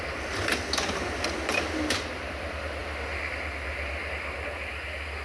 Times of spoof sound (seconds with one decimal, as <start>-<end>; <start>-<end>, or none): none